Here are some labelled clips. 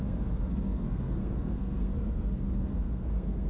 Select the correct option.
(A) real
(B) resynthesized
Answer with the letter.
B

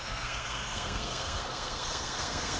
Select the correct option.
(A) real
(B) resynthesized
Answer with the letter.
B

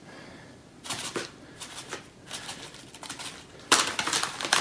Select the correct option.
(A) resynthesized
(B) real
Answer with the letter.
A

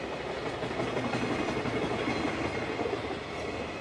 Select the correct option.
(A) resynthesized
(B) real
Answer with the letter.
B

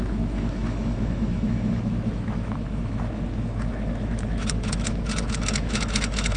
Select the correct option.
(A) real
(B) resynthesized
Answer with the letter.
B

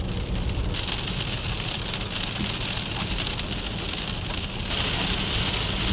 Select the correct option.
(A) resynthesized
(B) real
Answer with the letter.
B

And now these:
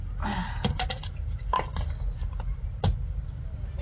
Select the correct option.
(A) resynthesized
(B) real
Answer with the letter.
B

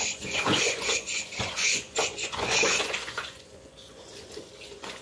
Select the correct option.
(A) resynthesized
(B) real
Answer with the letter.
A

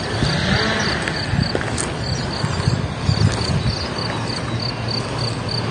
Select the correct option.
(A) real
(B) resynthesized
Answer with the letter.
A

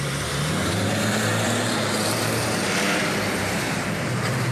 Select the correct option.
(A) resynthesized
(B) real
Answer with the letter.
A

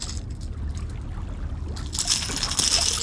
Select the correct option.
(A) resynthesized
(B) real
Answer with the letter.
B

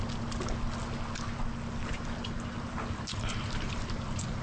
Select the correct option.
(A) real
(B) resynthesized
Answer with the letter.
A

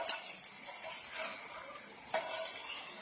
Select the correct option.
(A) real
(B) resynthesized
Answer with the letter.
A